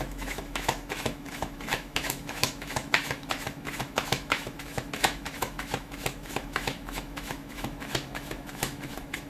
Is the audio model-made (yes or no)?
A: yes